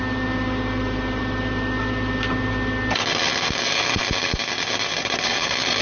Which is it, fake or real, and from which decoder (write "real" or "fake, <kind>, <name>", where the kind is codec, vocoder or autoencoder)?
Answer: real